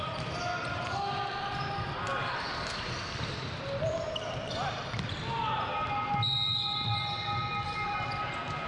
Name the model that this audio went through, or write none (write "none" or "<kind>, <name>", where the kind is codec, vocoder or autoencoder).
none